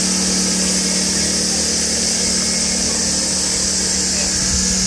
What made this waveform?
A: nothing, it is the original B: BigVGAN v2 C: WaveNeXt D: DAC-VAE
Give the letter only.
A